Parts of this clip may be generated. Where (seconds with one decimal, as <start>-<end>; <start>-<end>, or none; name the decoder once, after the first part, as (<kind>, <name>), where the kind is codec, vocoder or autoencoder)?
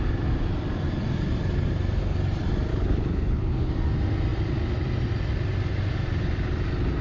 2.7-3.7 (codec, HILCodec)